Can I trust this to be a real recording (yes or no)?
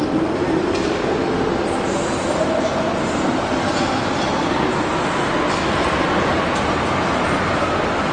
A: yes